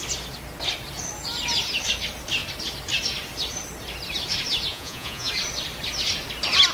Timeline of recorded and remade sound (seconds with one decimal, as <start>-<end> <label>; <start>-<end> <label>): 0.0-4.7 recorded; 4.7-5.3 remade; 5.3-6.7 recorded